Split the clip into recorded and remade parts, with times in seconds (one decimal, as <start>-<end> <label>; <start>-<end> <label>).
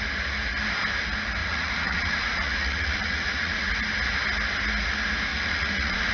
0.0-1.4 recorded; 1.4-3.7 remade; 3.7-5.3 recorded; 5.3-6.1 remade